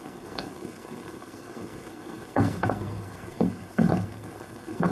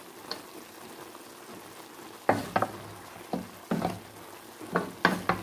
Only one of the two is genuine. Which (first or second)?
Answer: second